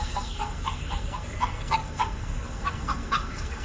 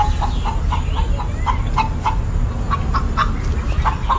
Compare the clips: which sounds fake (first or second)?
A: first